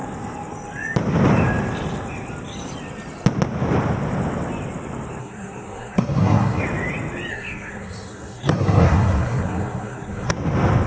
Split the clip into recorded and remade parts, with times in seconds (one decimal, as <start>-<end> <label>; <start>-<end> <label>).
0.0-5.2 recorded; 5.2-6.6 remade; 6.6-7.3 recorded; 7.3-10.3 remade; 10.3-10.9 recorded